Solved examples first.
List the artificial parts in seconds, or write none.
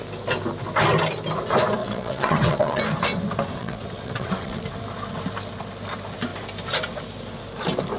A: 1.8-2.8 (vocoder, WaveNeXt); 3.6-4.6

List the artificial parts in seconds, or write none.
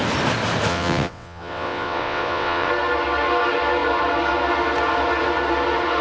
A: 0.7-2.7 (vocoder, WaveNeXt)